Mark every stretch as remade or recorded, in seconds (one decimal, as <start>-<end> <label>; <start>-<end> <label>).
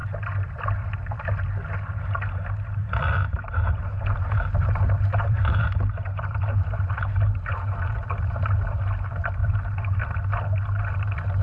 0.0-2.8 recorded; 2.8-6.9 remade; 6.9-7.5 recorded; 7.5-8.8 remade; 8.8-9.4 recorded; 9.4-10.0 remade; 10.0-11.4 recorded